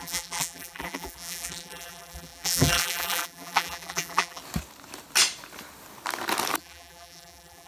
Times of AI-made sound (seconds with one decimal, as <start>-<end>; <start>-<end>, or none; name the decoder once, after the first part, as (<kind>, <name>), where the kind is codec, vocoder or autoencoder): 0.0-4.4 (vocoder, BigVGAN v2); 6.6-7.7